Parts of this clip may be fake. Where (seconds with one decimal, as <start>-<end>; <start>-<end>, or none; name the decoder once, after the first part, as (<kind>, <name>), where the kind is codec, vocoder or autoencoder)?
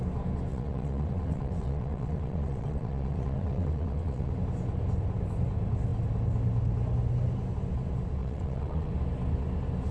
0.5-4.3 (vocoder, WaveNeXt); 8.2-8.9